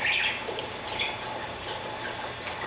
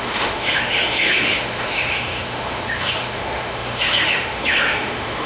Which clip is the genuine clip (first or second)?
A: first